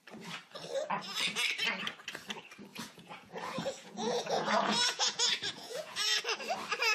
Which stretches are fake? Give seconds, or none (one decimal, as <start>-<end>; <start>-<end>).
2.7-6.2